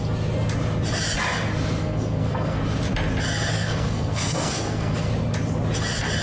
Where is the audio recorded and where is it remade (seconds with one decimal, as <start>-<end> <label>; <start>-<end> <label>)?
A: 0.0-1.8 recorded; 1.8-2.6 remade; 2.6-3.5 recorded; 3.5-5.1 remade; 5.1-6.2 recorded